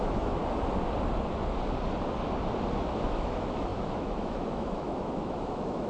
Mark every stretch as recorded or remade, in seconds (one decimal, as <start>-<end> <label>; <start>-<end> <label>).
0.0-0.4 remade; 0.4-2.9 recorded; 2.9-5.9 remade